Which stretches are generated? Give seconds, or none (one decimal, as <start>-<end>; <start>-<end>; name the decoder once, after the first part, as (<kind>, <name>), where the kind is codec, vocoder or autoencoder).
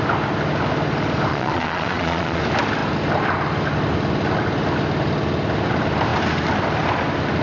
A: 1.3-2.4 (vocoder, Vocos)